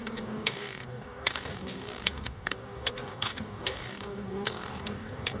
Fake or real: fake